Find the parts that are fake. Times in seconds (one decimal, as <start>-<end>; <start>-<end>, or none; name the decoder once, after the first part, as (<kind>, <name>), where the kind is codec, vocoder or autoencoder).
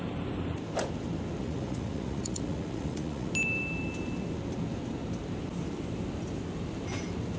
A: 1.4-3.3 (vocoder, Vocos)